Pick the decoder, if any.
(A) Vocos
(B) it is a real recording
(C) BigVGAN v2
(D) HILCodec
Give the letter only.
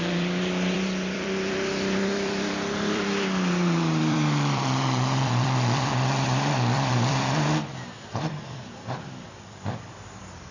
C